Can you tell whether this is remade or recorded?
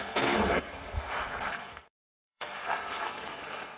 remade